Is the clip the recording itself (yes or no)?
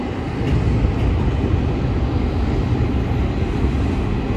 yes